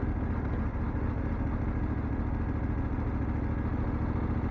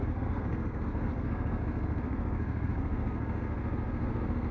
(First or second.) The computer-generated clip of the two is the second